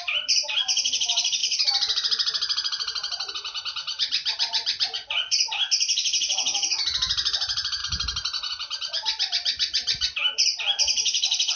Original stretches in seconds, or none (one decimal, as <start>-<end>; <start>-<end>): 7.8-8.5